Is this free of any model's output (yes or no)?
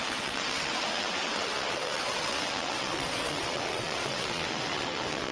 no